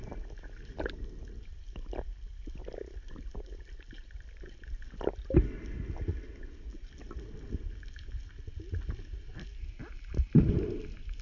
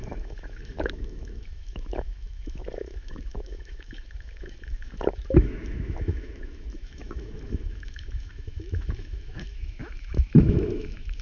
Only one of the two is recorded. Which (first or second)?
first